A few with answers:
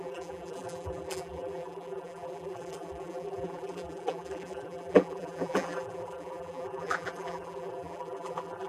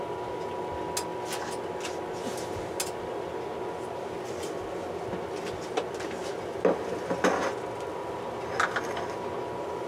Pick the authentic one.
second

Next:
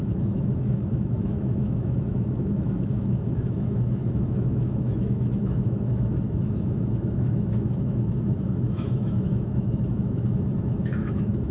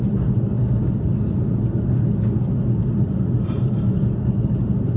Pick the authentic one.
second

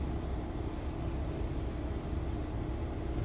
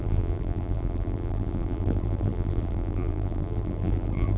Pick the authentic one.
first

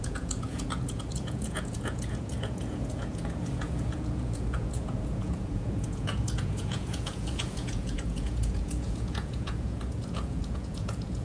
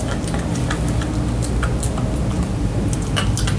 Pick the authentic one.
second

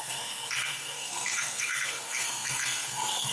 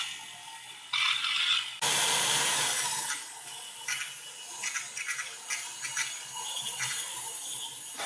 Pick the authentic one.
second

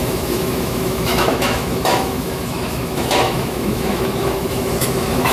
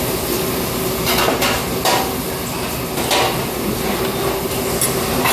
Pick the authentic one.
second